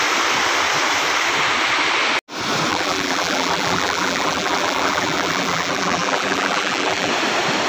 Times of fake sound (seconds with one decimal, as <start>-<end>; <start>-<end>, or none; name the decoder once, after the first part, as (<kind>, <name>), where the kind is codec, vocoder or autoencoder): 2.7-7.1 (vocoder, BigVGAN v2)